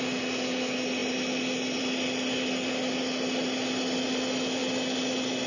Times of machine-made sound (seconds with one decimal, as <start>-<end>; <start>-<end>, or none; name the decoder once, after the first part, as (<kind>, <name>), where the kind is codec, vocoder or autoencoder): none